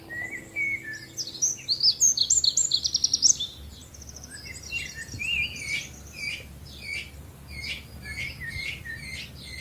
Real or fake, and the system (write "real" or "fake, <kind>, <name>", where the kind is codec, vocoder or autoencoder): real